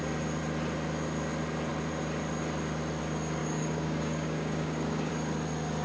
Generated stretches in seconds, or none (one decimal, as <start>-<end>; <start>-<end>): 3.4-5.1